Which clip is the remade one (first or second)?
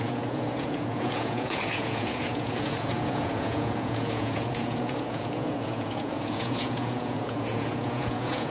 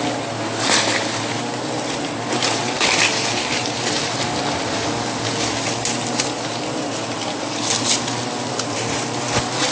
first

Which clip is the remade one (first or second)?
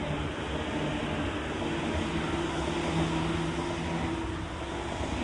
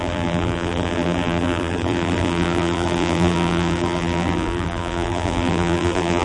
second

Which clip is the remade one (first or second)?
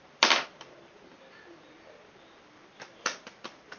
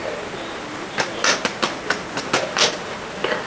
first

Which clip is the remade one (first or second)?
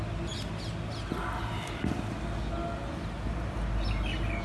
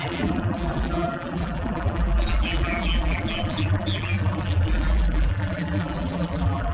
second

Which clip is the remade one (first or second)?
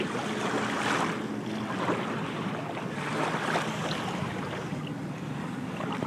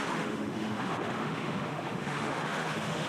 second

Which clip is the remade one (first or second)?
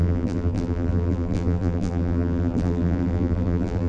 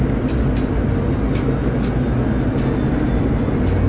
first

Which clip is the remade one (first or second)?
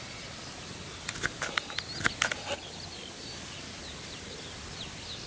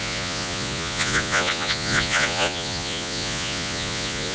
second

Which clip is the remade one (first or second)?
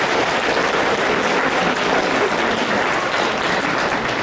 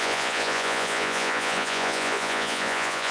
second